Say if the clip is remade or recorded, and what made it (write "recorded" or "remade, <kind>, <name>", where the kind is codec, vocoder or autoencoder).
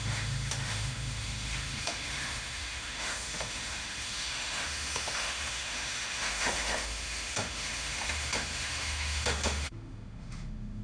remade, autoencoder, DAC-VAE